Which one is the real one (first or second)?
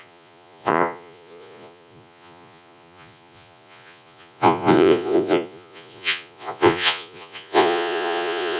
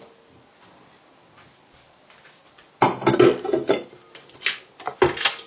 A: second